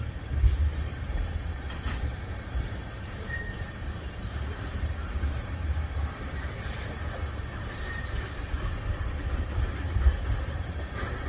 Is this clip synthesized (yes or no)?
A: yes